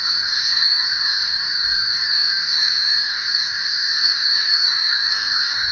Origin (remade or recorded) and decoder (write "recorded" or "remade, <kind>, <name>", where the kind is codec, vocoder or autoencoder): remade, codec, DAC